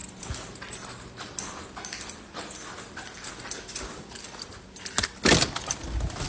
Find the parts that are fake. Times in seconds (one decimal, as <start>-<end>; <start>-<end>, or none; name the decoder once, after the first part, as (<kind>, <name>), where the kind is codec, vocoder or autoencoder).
none